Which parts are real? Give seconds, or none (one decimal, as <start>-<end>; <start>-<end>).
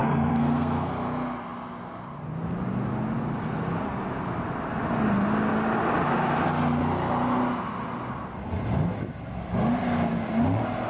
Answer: 0.9-10.9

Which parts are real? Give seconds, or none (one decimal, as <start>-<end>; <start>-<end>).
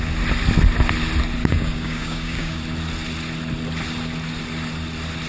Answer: 0.0-1.4; 2.6-5.3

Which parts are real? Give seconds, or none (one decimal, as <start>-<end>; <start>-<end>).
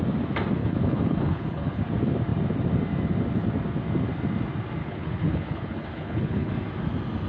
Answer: 0.0-0.6; 1.8-4.8; 6.5-7.3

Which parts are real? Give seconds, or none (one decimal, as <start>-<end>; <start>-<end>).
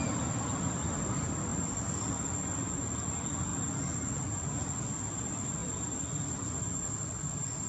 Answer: 0.0-7.7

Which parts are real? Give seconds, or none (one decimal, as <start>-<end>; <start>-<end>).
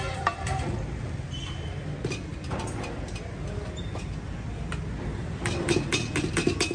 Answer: 0.0-6.7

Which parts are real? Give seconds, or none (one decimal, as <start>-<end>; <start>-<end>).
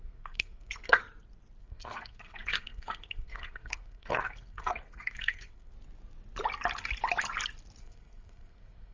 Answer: 1.0-1.6; 5.7-7.8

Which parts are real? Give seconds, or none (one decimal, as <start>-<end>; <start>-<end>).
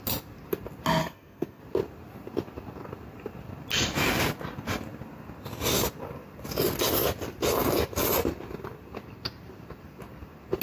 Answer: 0.0-1.0; 1.6-10.6